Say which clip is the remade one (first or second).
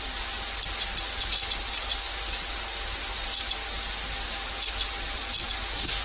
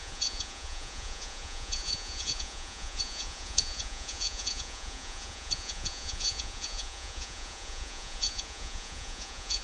second